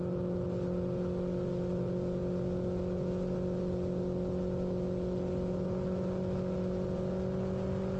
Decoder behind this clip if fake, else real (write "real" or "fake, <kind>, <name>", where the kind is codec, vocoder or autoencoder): real